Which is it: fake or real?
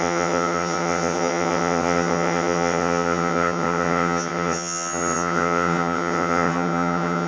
fake